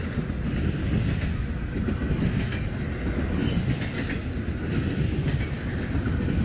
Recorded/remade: recorded